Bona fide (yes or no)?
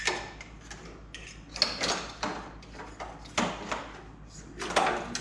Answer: yes